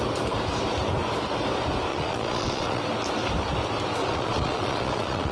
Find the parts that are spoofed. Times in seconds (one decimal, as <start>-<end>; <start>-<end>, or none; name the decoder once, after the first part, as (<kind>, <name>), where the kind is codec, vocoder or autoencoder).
1.9-2.8 (vocoder, Vocos); 4.0-5.3